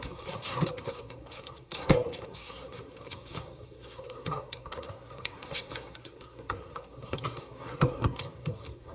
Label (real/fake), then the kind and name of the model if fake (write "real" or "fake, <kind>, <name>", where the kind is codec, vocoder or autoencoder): fake, codec, SNAC